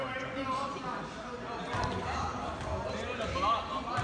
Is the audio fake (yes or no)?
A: no